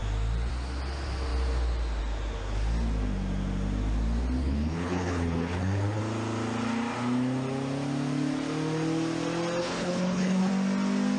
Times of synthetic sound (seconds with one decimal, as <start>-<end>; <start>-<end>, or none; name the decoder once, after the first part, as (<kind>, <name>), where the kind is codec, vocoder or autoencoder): 4.4-6.0 (codec, HILCodec); 9.6-10.5